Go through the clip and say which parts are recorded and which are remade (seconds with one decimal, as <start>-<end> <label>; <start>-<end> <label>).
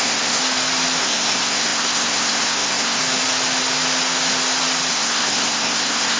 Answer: 0.0-0.4 remade; 0.4-1.0 recorded; 1.0-3.0 remade; 3.0-4.9 recorded; 4.9-6.2 remade